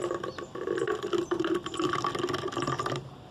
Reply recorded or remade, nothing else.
recorded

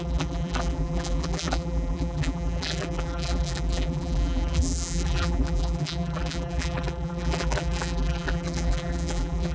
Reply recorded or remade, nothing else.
remade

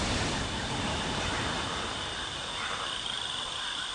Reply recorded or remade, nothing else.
recorded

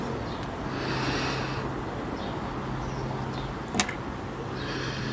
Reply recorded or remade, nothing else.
recorded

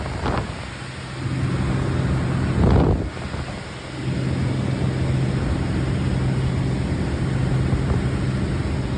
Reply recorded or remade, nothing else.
recorded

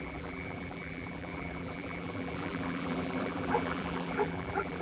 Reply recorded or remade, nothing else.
remade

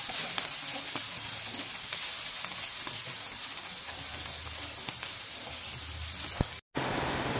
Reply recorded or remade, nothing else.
recorded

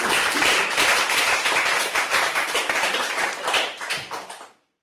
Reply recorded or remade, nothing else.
remade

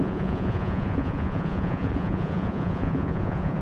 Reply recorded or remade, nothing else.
remade